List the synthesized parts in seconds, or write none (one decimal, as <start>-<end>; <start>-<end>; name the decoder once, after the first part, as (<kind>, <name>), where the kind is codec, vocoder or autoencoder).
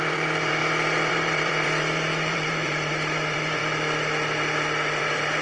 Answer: 0.0-0.6 (vocoder, BigVGAN v2); 1.1-3.6; 5.0-5.4